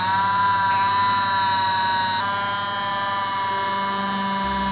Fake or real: real